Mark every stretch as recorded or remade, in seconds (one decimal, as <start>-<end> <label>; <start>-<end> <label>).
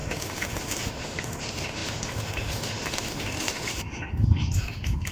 0.0-5.1 remade